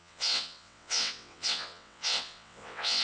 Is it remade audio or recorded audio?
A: remade